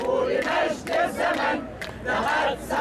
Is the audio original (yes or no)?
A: yes